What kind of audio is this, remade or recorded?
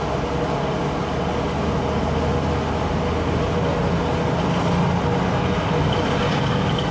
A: recorded